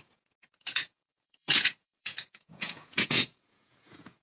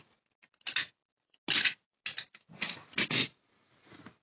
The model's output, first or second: first